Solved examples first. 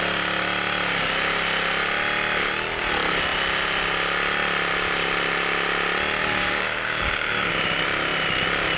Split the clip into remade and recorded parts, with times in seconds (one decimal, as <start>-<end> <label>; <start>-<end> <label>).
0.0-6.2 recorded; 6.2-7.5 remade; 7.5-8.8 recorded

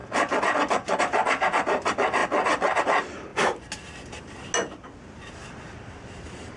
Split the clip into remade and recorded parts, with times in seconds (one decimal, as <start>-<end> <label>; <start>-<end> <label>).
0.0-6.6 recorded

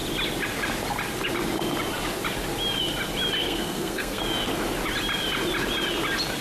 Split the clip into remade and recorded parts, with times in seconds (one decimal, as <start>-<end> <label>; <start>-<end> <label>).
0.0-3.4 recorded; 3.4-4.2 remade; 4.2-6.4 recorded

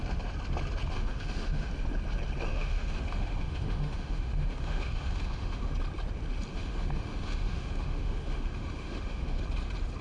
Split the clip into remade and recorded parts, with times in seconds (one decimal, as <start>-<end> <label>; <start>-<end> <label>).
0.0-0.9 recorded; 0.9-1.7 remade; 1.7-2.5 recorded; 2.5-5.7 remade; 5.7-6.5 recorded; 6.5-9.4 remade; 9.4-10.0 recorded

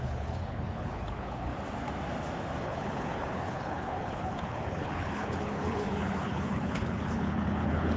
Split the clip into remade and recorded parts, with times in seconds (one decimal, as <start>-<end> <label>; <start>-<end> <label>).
0.0-1.5 remade; 1.5-2.6 recorded; 2.6-8.0 remade

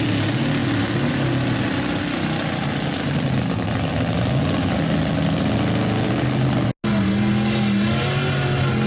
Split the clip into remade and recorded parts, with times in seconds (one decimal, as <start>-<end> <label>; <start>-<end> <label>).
0.0-8.9 recorded